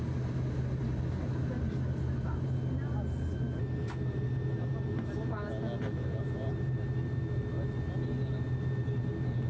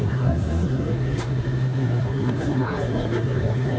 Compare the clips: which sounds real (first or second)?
first